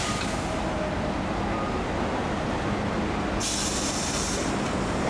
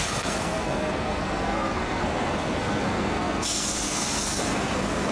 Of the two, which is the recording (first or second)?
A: first